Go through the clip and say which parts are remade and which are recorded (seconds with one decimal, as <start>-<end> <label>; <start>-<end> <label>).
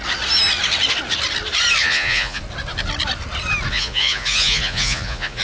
0.0-1.8 recorded; 1.8-2.4 remade; 2.4-3.7 recorded; 3.7-5.4 remade